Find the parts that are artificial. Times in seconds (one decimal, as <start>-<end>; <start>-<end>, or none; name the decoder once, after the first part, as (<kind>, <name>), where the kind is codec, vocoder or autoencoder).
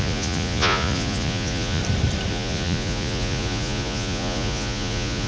0.0-1.8 (vocoder, Vocos); 2.3-5.3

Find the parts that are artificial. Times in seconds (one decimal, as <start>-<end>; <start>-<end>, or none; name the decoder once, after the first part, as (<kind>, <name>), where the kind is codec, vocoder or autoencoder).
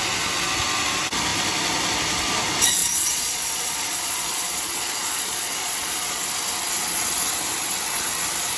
2.8-6.2 (vocoder, Vocos)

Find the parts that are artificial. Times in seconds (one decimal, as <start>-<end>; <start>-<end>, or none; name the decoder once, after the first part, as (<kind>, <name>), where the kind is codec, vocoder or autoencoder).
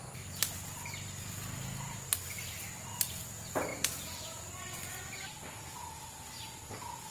3.7-4.4 (vocoder, Vocos)